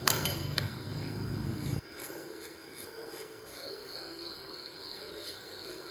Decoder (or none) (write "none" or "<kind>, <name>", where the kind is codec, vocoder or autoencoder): codec, SNAC